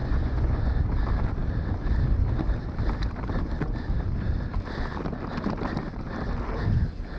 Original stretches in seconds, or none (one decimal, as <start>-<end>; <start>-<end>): 0.7-7.2